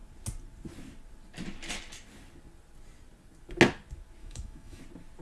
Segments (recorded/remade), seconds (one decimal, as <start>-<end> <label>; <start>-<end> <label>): 0.0-4.2 recorded; 4.2-4.8 remade; 4.8-5.2 recorded